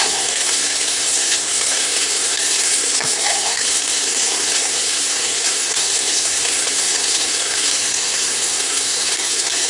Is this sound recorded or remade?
remade